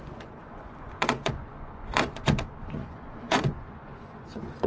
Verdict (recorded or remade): remade